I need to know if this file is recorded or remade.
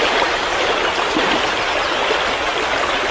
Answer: recorded